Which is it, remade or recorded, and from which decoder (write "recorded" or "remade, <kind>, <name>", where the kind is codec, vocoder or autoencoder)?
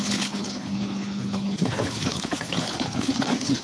remade, codec, HILCodec